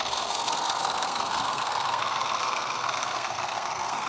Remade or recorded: remade